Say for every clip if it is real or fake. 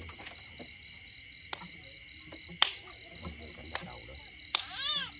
real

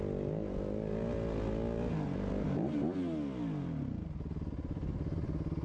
real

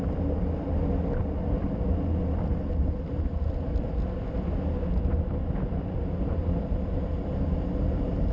real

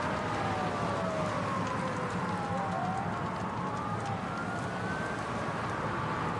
real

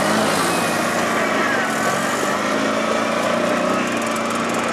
real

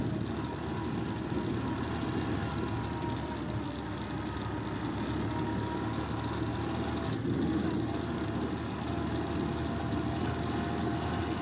real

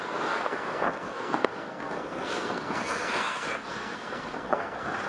fake